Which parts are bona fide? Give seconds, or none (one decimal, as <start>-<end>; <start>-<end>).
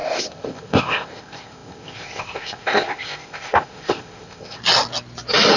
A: 4.6-5.6